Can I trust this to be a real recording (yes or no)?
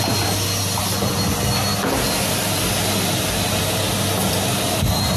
yes